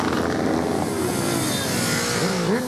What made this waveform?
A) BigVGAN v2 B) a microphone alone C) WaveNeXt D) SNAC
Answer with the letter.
B